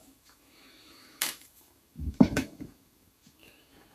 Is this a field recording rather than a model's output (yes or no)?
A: no